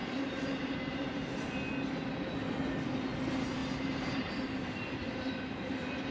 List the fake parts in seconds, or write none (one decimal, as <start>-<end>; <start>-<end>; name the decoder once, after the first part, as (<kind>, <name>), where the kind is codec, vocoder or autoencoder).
0.0-1.5 (vocoder, BigVGAN v2); 3.6-4.3; 5.0-6.1